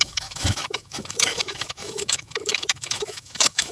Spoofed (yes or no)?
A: yes